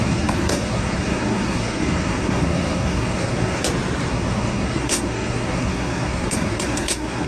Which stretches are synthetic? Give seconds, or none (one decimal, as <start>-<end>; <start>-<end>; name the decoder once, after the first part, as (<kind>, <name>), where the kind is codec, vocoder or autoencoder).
0.0-3.6 (codec, SNAC); 4.1-7.3